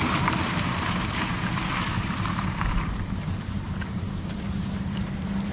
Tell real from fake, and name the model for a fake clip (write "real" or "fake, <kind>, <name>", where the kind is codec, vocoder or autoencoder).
fake, vocoder, BigVGAN v2